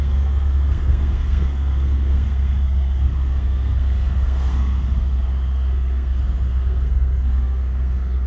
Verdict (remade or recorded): remade